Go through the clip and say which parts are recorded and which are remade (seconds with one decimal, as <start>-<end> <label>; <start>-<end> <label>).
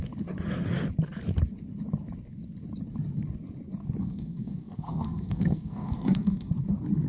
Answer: 0.0-4.0 recorded; 4.0-6.5 remade; 6.5-7.1 recorded